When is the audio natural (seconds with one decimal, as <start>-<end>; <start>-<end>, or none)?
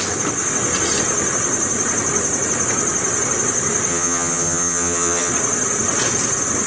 0.0-3.9; 5.3-6.7